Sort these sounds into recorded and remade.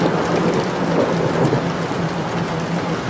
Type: recorded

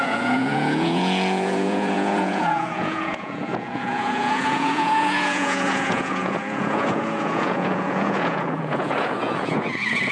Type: remade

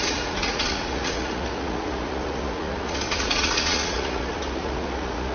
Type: remade